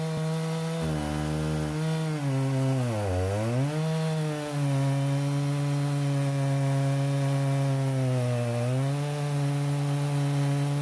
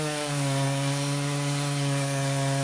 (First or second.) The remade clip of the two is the second